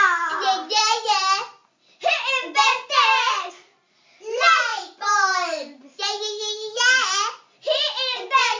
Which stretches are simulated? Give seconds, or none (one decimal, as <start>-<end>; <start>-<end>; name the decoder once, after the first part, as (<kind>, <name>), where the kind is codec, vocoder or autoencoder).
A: none